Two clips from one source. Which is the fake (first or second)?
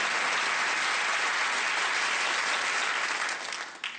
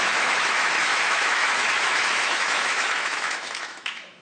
second